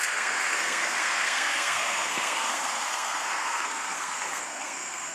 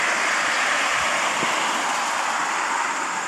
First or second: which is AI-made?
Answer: first